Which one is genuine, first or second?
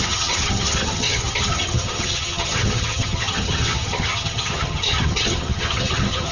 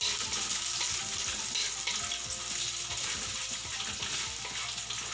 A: second